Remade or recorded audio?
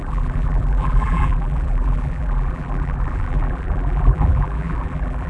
remade